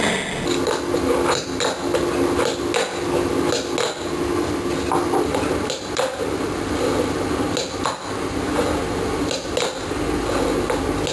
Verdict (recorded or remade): recorded